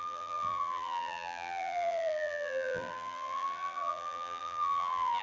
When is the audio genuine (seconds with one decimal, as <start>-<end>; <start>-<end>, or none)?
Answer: none